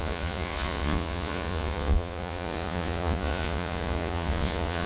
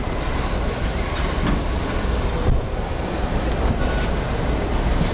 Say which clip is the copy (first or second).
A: first